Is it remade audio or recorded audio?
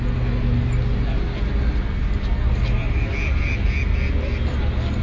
recorded